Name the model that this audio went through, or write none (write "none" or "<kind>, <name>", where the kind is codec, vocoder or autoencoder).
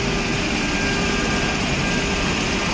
none